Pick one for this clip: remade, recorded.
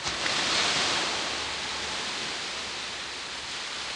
recorded